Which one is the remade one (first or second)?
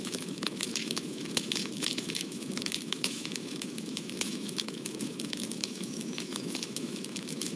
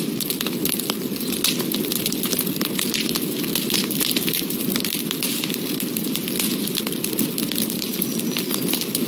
first